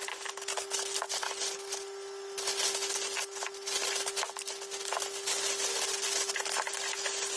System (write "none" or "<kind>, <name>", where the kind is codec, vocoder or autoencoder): none